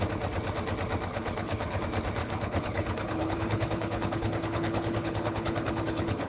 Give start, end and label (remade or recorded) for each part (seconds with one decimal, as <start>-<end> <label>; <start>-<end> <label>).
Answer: 0.0-1.1 recorded; 1.1-1.8 remade; 1.8-2.2 recorded; 2.2-6.3 remade

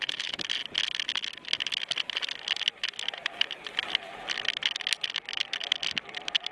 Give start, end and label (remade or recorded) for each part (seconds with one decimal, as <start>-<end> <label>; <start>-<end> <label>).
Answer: 0.0-6.5 recorded

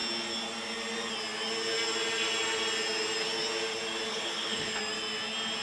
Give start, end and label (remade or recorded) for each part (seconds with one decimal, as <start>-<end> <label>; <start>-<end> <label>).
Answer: 0.0-4.1 recorded; 4.1-4.8 remade; 4.8-5.6 recorded